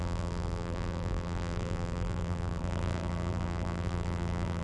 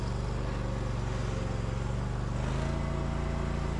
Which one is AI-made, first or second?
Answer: first